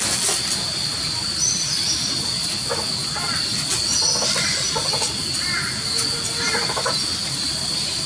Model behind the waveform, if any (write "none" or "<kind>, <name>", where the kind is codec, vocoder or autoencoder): none